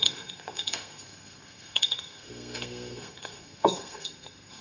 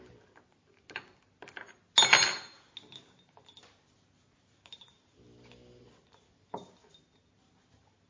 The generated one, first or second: first